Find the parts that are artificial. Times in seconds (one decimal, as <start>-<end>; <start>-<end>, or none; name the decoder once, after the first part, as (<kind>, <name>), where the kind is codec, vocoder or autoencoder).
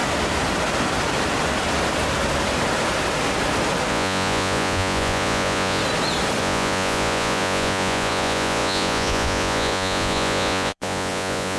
3.9-5.8 (vocoder, Vocos); 6.4-11.6